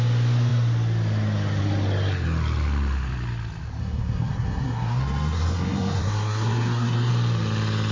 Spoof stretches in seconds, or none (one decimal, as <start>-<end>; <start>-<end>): 3.8-7.1